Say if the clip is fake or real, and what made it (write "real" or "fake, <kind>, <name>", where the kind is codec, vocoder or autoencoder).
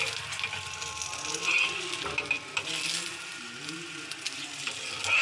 real